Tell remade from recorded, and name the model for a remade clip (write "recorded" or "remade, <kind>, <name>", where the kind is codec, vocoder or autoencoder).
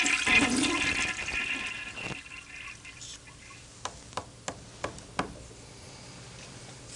recorded